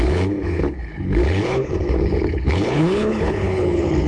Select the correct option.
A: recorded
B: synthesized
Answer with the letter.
B